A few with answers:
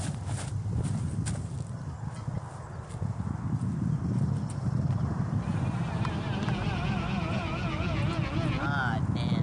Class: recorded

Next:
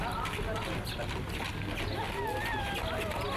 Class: recorded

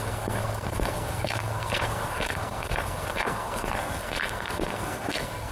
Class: remade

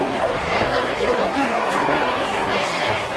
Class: remade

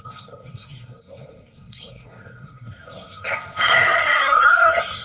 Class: remade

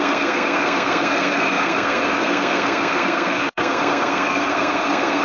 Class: remade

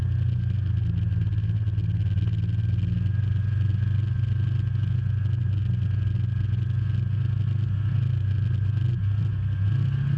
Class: recorded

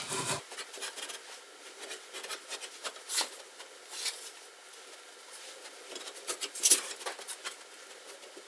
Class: recorded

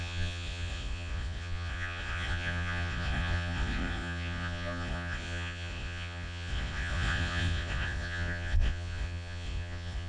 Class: remade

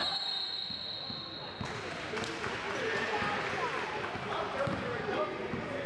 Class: recorded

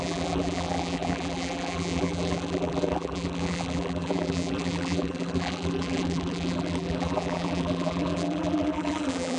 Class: remade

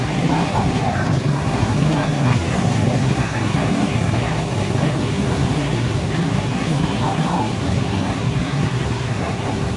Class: remade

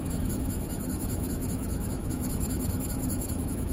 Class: remade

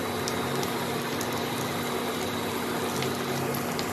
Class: recorded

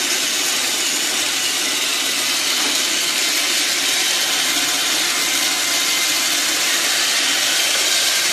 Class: recorded